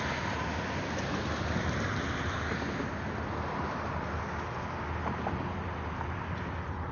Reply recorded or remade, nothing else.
recorded